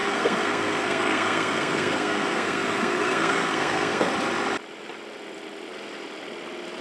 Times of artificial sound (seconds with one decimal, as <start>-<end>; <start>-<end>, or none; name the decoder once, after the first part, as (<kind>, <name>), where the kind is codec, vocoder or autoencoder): 0.0-4.1 (codec, SNAC)